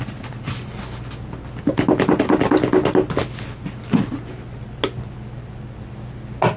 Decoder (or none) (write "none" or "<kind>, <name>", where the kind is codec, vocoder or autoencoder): none